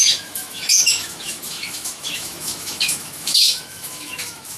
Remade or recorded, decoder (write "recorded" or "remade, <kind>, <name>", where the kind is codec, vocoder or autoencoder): remade, autoencoder, DAC-VAE